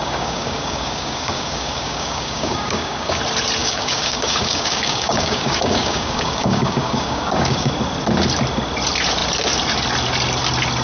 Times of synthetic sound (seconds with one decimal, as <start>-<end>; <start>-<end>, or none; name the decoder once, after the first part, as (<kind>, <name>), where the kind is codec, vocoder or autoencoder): 0.0-3.2 (codec, DAC); 3.6-7.7